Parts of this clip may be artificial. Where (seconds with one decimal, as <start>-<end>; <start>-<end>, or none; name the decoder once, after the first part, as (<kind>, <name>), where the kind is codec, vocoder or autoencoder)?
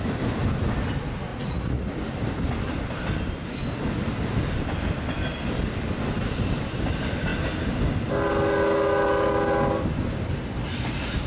1.3-1.9 (vocoder, Vocos)